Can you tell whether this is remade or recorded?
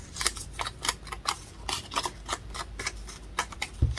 remade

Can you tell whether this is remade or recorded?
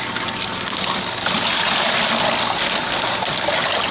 recorded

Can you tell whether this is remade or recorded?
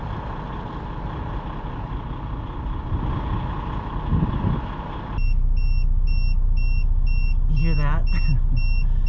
recorded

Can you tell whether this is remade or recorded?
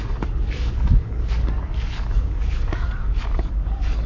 remade